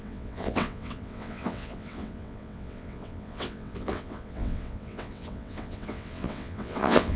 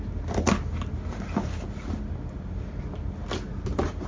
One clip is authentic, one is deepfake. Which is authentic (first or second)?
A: second